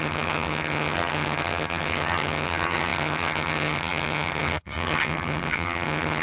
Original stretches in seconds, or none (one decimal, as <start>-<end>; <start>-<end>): none